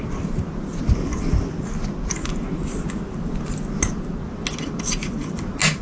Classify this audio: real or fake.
real